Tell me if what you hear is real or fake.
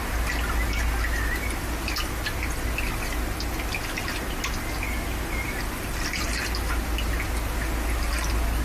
real